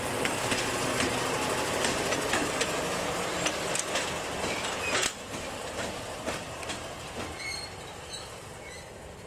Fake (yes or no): no